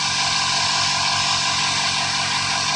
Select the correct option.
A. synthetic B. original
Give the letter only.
A